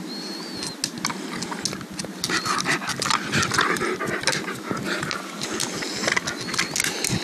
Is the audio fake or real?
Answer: real